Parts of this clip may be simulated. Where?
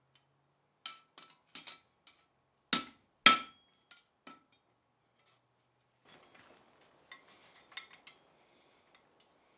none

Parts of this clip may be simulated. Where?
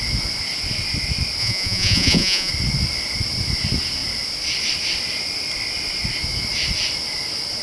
1.4-2.5 (vocoder, Vocos)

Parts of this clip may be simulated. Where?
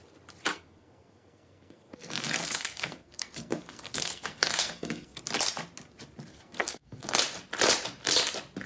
0.5-5.2 (codec, SNAC); 6.3-7.2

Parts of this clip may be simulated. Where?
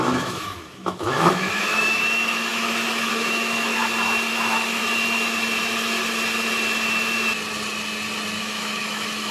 0.0-3.8 (autoencoder, DAC-VAE); 4.3-4.8; 8.4-9.3